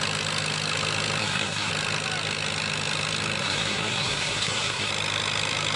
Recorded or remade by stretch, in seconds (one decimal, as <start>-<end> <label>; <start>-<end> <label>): 0.0-1.2 recorded; 1.2-1.7 remade; 1.7-3.4 recorded; 3.4-4.9 remade; 4.9-5.8 recorded

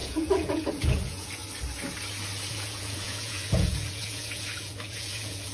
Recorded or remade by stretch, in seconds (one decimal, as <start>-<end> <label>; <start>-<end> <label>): 0.0-1.4 remade; 1.4-2.5 recorded; 2.5-5.5 remade

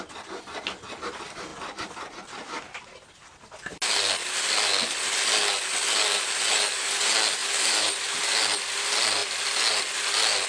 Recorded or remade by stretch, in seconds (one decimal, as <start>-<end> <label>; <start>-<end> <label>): 0.0-7.4 recorded; 7.4-8.2 remade; 8.2-10.5 recorded

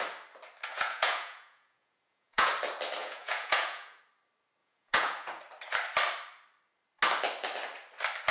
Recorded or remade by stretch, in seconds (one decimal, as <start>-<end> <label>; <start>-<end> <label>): 0.0-0.7 recorded; 0.7-2.5 remade; 2.5-3.0 recorded; 3.0-4.0 remade; 4.0-4.6 recorded; 4.6-5.4 remade; 5.4-8.3 recorded